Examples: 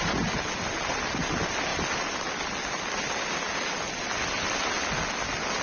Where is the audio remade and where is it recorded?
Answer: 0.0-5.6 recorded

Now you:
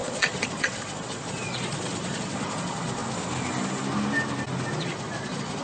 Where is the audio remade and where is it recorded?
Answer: 0.0-3.0 remade; 3.0-4.8 recorded; 4.8-5.6 remade

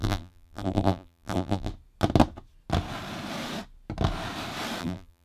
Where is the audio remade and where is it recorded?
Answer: 0.0-1.7 remade; 1.7-4.8 recorded; 4.8-5.2 remade

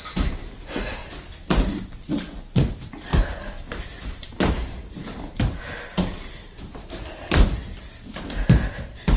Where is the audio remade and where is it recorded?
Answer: 0.0-1.0 remade; 1.0-2.7 recorded; 2.7-7.6 remade; 7.6-9.2 recorded

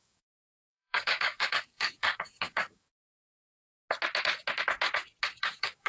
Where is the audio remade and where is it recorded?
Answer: 0.0-3.0 remade; 3.0-5.4 recorded; 5.4-5.9 remade

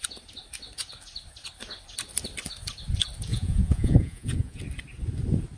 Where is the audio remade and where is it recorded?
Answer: 0.0-3.3 recorded; 3.3-4.6 remade; 4.6-5.6 recorded

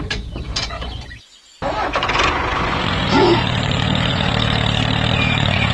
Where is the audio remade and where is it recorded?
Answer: 0.0-1.3 remade; 1.3-1.9 recorded; 1.9-4.3 remade; 4.3-5.1 recorded; 5.1-5.7 remade

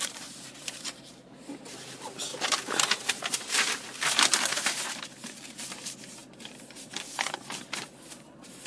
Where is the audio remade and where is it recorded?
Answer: 0.0-2.3 remade; 2.3-3.2 recorded; 3.2-8.7 remade